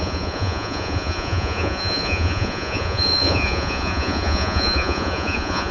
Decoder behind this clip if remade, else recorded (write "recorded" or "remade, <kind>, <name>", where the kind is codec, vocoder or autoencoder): remade, vocoder, Vocos